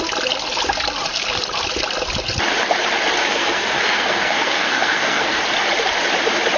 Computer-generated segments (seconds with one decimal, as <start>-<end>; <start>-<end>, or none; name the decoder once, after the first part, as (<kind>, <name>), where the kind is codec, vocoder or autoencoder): 3.2-5.4 (codec, SNAC)